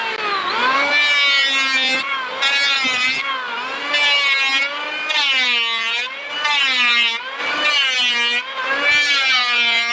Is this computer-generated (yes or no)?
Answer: no